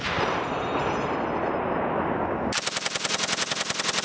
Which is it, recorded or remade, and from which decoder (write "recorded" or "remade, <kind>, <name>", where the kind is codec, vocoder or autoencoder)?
recorded